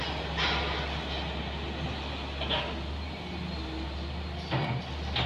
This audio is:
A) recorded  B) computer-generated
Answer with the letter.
A